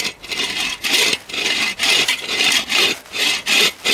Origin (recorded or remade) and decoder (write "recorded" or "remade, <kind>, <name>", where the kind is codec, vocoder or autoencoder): recorded